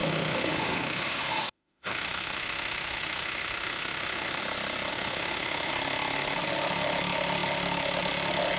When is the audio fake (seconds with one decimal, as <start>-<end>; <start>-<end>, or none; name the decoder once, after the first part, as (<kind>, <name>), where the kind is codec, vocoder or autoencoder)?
0.0-4.4 (autoencoder, DAC-VAE); 4.9-5.7